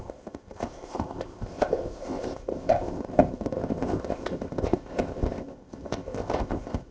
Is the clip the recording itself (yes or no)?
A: no